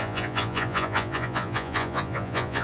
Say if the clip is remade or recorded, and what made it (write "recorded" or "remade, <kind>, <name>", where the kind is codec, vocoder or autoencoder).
remade, vocoder, Vocos